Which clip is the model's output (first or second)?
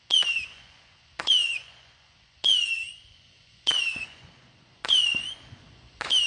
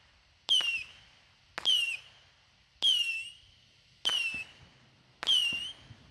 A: first